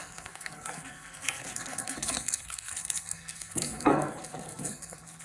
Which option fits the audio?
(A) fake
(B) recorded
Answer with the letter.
A